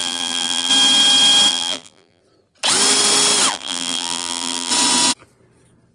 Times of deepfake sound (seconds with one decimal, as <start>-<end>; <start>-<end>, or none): 0.0-0.7; 1.5-2.2; 3.5-4.7